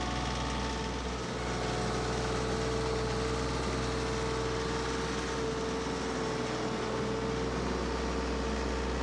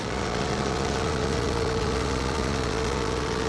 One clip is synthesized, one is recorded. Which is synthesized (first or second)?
second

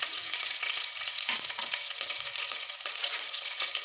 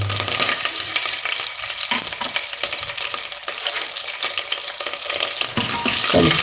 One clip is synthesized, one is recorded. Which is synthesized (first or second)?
first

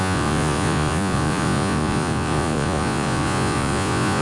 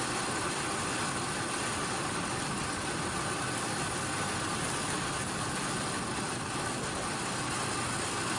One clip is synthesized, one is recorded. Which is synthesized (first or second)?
first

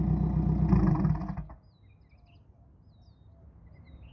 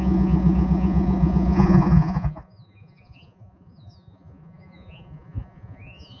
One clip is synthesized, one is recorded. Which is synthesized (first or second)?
second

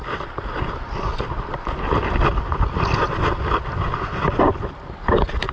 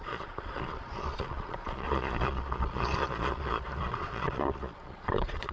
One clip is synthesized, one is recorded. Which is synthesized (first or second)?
second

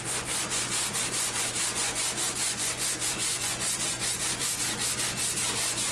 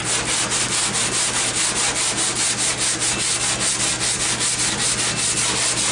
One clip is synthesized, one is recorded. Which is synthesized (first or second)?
first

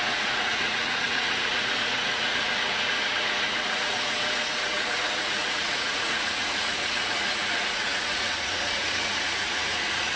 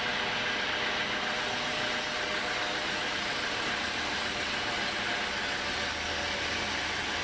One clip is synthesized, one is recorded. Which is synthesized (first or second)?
first